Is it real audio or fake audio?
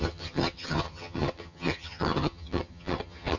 fake